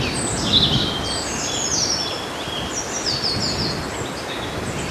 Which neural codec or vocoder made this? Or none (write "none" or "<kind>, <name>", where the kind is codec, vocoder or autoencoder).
none